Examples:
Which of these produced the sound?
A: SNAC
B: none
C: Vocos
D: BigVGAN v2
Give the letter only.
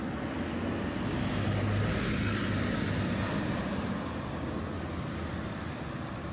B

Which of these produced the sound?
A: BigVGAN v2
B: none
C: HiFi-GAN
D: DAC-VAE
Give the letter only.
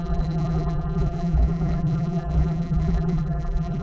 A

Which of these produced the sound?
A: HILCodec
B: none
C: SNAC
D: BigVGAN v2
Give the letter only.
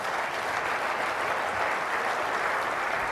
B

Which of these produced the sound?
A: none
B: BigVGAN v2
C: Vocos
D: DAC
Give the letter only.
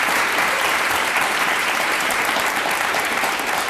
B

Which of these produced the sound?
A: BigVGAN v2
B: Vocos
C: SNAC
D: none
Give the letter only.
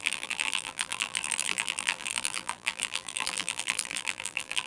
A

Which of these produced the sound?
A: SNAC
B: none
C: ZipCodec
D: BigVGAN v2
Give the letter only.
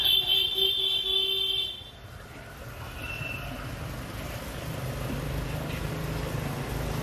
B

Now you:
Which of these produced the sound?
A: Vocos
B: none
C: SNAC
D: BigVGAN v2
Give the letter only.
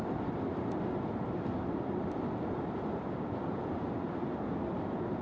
D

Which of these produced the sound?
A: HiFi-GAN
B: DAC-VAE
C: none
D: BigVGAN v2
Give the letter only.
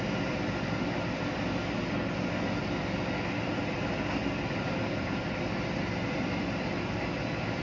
C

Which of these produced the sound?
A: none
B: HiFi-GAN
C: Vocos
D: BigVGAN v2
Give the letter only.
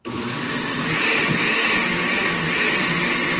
A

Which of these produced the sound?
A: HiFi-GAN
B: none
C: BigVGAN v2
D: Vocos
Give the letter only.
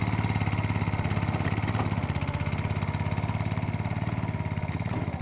B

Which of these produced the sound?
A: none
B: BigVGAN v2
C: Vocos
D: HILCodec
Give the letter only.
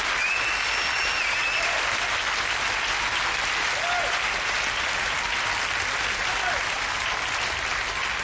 A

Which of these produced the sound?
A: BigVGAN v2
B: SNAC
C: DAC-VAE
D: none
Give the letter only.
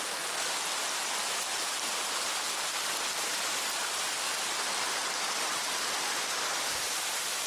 D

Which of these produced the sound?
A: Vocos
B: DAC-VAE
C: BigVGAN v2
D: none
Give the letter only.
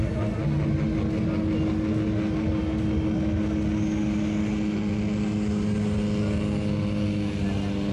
D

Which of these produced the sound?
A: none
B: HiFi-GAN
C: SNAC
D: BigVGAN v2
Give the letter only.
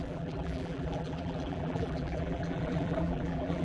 D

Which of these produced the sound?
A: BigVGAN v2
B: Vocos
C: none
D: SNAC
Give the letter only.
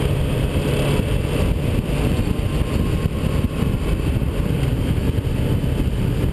C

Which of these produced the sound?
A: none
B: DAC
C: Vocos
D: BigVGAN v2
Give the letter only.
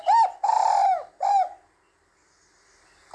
A